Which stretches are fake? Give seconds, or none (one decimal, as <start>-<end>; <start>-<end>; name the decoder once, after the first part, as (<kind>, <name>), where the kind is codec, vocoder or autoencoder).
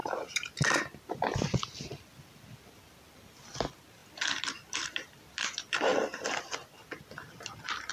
0.0-5.9 (vocoder, BigVGAN v2)